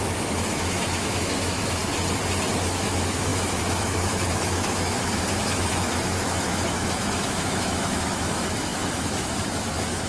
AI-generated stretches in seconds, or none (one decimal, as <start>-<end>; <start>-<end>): 0.0-1.8; 2.5-10.1